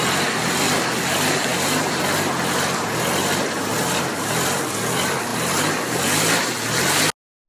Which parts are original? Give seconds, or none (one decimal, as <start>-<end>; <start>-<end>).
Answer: 0.0-7.5